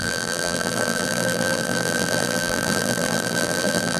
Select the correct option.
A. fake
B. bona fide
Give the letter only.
A